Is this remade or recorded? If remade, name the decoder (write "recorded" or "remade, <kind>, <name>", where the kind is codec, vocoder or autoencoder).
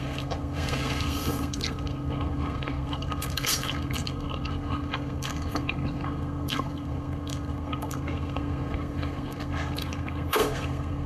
remade, codec, SNAC